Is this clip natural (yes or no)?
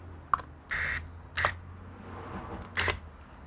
yes